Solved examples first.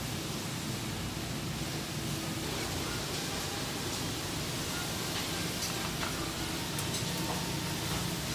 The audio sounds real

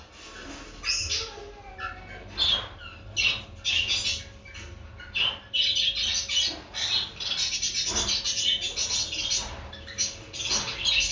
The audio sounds real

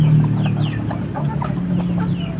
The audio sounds real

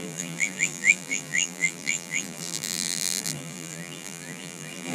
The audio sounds fake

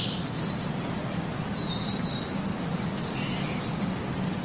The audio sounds real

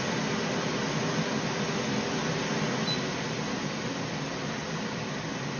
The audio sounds real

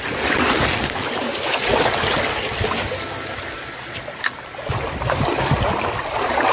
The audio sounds real